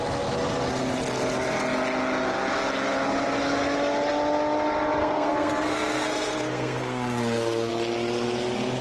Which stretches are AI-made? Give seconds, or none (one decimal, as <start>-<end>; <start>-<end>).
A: 5.0-7.7